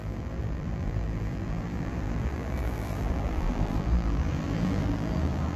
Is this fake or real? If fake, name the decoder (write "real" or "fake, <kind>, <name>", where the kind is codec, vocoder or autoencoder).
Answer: fake, vocoder, BigVGAN v2